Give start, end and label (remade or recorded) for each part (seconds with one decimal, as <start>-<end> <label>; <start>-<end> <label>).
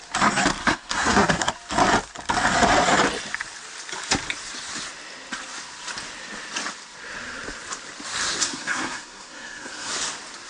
0.0-0.6 recorded; 0.6-1.5 remade; 1.5-8.4 recorded; 8.4-9.9 remade; 9.9-10.5 recorded